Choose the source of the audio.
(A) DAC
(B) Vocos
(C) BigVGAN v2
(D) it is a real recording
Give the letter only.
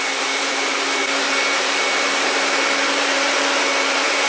C